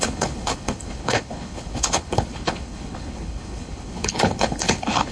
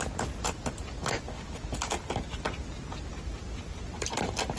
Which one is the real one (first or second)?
second